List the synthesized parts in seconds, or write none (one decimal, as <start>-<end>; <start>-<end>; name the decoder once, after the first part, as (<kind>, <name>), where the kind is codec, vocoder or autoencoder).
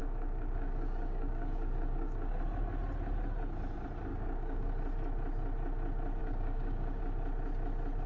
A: 0.0-2.3 (codec, DAC); 4.1-4.7; 6.2-7.0